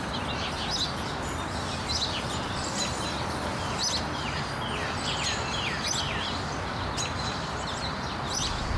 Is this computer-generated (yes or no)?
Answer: no